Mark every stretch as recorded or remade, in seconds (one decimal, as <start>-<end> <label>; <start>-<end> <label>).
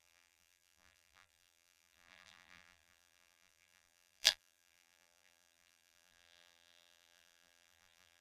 0.0-8.2 remade